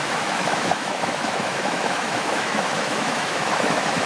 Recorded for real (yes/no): no